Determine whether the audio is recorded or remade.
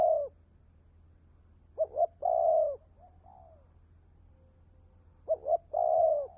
recorded